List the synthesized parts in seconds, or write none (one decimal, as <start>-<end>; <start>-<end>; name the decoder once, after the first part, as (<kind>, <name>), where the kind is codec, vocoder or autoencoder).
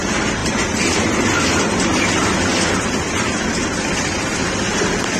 none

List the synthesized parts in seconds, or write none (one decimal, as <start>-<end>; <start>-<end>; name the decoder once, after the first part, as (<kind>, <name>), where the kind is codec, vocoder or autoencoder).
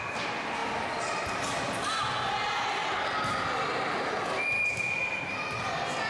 none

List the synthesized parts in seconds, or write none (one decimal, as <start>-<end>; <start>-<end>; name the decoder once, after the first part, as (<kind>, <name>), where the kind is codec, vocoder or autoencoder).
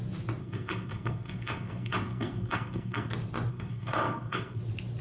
0.4-3.1 (codec, SNAC); 3.5-4.6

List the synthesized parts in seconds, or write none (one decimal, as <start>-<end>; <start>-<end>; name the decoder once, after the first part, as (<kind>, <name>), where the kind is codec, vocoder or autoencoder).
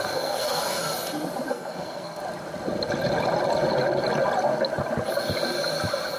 0.0-0.8 (codec, SNAC); 1.5-2.2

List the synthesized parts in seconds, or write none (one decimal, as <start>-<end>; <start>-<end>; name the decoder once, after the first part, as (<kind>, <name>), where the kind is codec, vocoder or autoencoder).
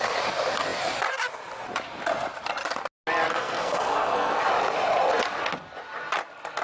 3.3-4.4 (codec, SNAC)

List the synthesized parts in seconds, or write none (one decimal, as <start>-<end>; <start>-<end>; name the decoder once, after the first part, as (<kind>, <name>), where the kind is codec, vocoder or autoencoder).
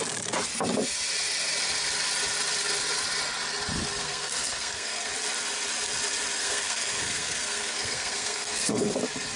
4.0-5.1 (codec, SNAC); 6.4-9.0